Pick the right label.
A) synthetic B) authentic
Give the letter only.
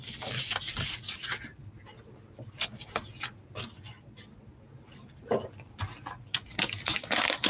B